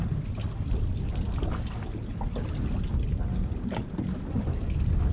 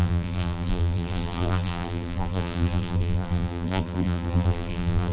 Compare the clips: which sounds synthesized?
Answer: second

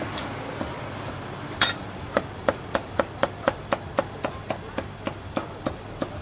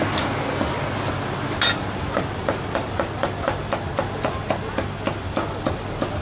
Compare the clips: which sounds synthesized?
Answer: first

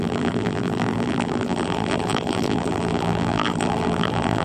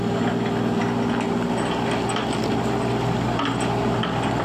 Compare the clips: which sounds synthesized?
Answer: first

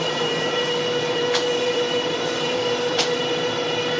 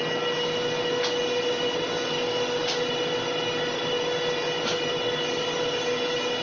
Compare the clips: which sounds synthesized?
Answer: first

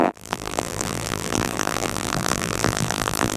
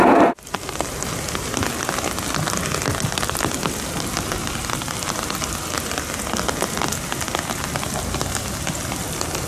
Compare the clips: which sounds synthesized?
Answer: first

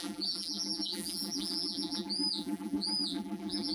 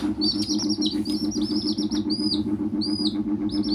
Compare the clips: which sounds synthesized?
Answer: first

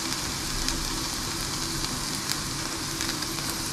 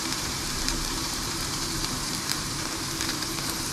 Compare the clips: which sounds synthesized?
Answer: second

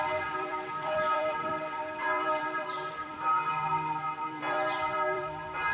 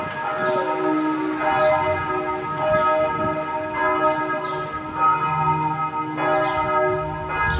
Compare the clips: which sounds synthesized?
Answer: first